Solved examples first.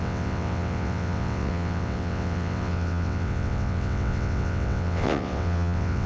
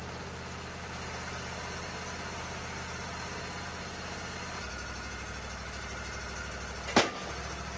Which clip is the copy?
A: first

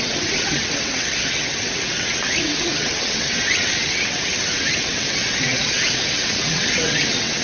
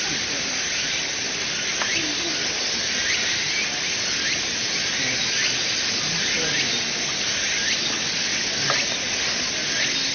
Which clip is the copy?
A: first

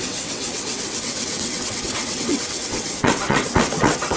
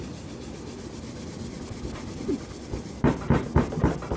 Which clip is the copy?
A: first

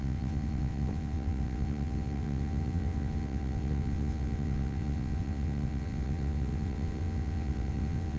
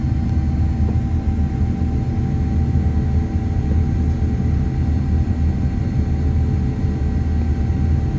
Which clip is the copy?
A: first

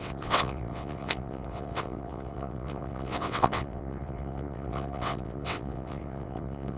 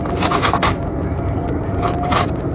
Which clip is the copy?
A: first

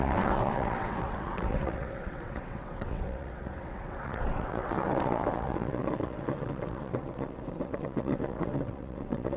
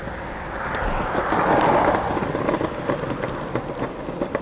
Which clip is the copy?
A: first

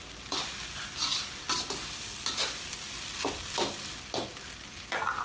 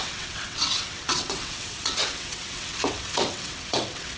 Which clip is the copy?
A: second